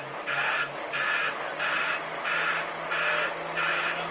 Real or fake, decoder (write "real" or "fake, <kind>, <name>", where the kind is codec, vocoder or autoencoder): real